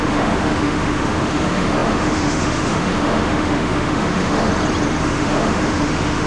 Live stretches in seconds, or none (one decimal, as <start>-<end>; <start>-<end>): 4.5-5.0